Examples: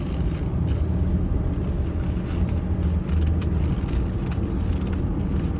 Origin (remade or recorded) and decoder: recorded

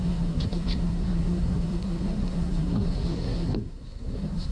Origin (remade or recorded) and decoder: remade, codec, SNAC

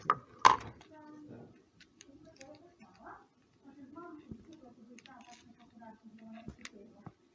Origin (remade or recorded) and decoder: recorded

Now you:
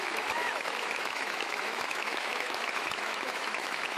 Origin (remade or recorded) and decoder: remade, autoencoder, DAC-VAE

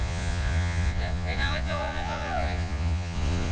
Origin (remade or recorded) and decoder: remade, vocoder, Vocos